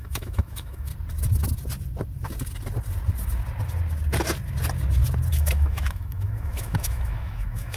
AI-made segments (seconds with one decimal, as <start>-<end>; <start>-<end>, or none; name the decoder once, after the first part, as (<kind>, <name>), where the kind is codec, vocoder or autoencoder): 0.0-0.9 (autoencoder, DAC-VAE); 5.3-7.8